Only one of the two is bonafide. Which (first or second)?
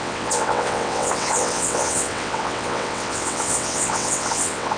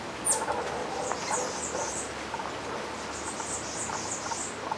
second